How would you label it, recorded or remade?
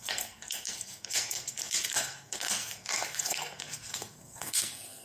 remade